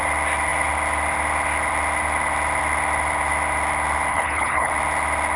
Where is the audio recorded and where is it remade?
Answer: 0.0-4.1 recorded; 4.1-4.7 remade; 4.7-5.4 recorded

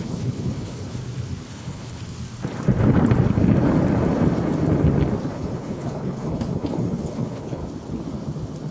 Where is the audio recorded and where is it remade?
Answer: 0.0-1.0 remade; 1.0-1.5 recorded; 1.5-2.0 remade; 2.0-5.3 recorded; 5.3-7.6 remade; 7.6-8.7 recorded